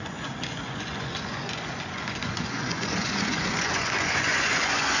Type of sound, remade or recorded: remade